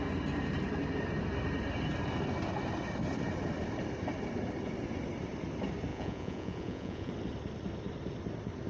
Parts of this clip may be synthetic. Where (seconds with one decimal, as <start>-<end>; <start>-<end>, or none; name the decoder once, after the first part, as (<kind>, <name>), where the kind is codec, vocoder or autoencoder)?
5.9-7.1 (vocoder, Vocos)